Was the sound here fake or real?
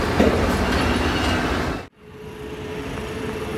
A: real